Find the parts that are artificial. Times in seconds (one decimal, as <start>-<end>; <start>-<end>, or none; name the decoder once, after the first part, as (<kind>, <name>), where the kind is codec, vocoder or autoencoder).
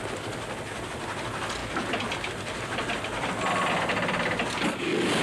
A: none